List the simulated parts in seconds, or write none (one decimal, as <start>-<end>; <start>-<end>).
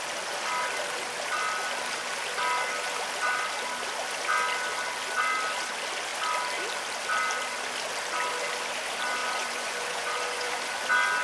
9.2-10.6